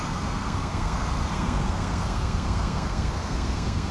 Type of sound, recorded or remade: remade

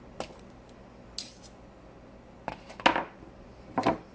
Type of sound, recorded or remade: recorded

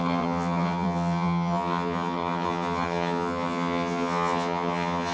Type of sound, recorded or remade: remade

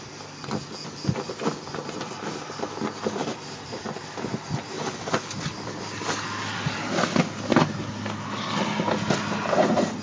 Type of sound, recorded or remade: recorded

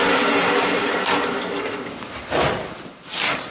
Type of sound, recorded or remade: recorded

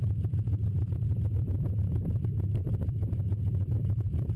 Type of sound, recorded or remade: remade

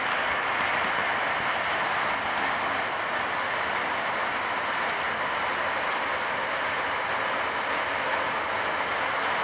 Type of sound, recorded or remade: recorded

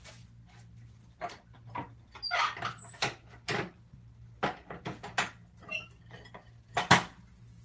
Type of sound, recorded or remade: recorded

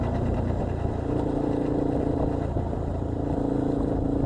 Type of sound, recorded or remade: remade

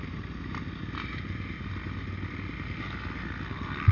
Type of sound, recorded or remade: recorded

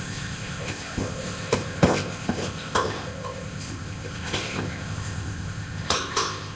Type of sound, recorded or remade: remade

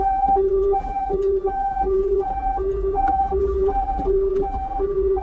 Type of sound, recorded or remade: remade